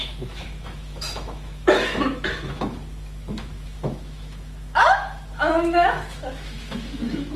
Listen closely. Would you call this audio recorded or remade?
remade